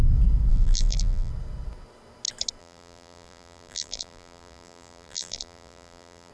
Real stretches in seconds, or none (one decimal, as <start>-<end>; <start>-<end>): 0.0-0.5; 1.3-2.6